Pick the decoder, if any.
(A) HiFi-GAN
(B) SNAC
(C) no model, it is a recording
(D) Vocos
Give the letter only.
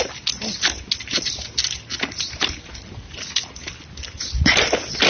C